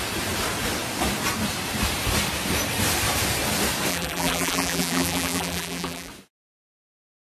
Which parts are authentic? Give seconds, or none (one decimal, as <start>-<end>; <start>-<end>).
0.0-3.9; 6.1-7.3